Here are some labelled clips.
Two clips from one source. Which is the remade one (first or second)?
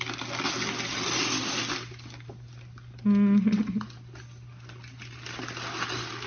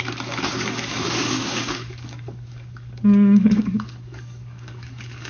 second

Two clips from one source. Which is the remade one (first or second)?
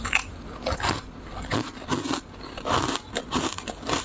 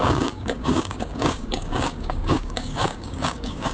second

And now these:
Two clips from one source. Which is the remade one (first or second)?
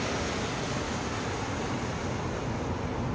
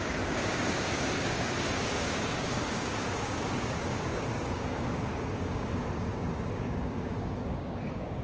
second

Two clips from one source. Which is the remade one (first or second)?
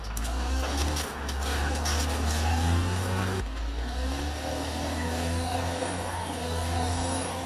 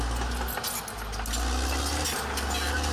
first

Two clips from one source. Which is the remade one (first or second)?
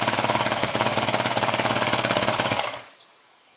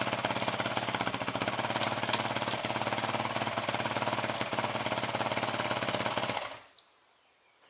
first